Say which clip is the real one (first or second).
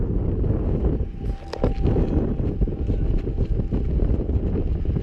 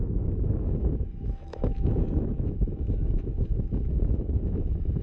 first